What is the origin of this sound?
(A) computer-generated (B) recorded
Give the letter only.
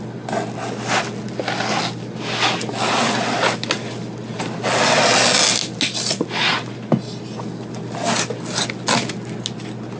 B